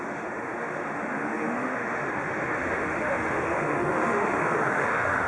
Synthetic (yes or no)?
yes